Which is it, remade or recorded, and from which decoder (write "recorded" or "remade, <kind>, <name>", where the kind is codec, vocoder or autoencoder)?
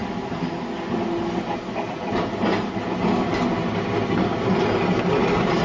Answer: recorded